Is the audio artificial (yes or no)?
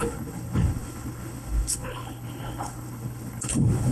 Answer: yes